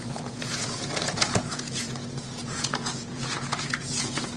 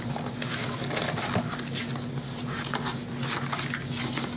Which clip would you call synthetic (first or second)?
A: first